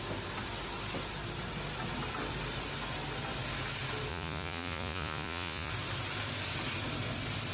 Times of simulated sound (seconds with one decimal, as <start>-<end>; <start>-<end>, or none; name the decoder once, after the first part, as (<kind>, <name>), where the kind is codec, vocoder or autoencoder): 4.1-5.7 (vocoder, Vocos)